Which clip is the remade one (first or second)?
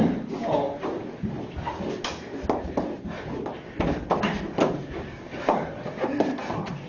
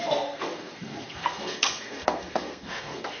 second